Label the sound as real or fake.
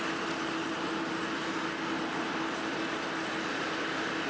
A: real